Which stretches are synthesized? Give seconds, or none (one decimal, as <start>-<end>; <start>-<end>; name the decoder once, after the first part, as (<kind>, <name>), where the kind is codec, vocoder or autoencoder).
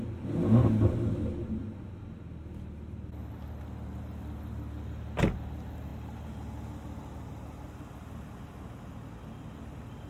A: none